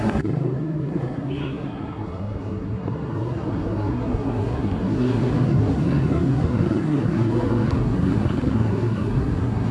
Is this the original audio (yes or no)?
no